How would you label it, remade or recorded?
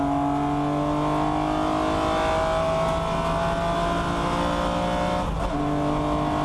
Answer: recorded